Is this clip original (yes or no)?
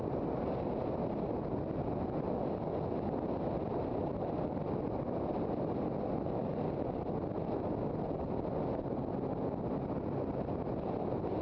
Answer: yes